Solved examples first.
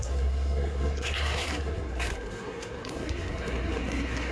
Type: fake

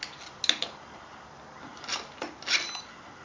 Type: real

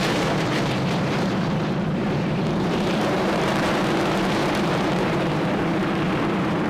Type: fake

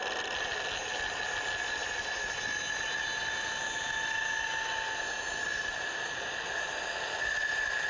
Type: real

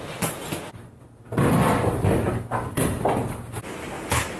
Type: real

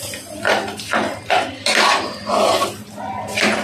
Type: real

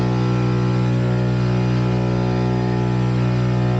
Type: real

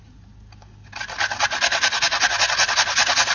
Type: real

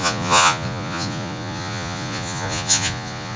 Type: fake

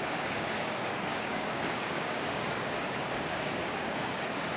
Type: fake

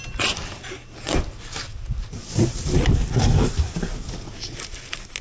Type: real